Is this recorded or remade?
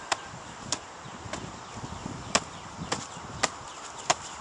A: recorded